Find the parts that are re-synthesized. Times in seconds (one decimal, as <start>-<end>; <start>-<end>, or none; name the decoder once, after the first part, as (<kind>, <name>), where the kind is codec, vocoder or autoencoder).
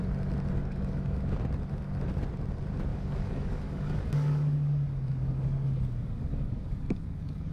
0.6-1.4 (codec, DAC); 2.9-7.5